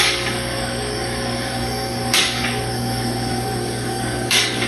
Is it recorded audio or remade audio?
remade